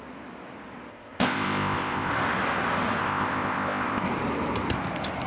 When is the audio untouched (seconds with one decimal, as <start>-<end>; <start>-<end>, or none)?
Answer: 0.0-0.9; 2.1-3.0; 4.1-5.3

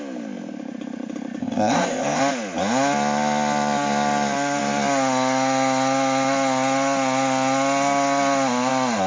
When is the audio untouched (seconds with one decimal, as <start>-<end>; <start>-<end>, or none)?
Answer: 0.0-1.4; 2.2-9.1

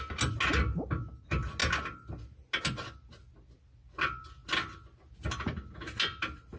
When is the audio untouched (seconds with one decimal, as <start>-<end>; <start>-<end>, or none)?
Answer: 0.0-6.6

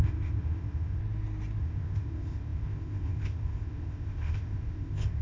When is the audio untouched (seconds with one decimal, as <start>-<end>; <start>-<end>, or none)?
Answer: 1.0-1.6

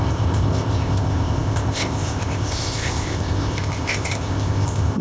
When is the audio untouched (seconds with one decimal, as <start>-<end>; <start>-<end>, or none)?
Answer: none

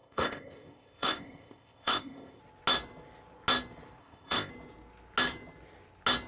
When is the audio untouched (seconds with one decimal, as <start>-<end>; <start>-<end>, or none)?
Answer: 2.4-4.0; 4.5-6.3

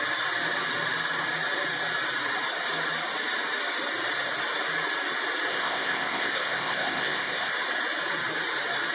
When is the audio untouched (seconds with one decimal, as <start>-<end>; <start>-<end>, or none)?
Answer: 0.0-5.5; 7.5-8.9

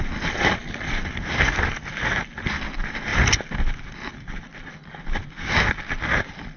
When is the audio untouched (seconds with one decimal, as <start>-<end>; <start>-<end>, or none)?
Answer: 0.0-6.6